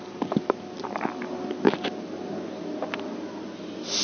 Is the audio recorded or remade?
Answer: recorded